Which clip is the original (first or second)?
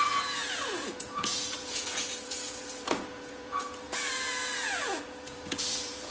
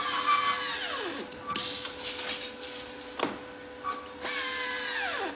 second